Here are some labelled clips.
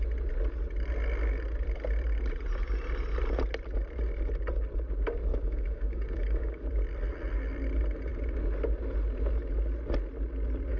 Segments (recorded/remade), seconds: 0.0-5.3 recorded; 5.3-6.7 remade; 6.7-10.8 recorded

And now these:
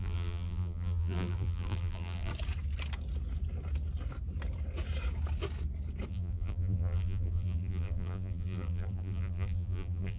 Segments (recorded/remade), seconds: 0.0-2.3 remade; 2.3-6.1 recorded; 6.1-10.2 remade